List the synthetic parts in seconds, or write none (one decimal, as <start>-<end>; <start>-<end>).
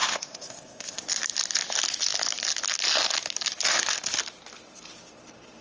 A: 0.0-1.0